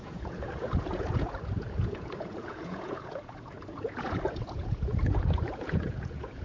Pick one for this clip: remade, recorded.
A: remade